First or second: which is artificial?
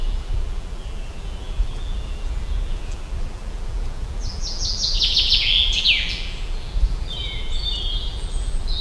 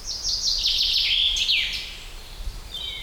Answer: first